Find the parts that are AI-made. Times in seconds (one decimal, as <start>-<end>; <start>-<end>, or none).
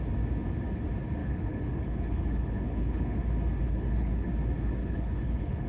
1.2-3.2; 3.6-4.3; 4.8-5.7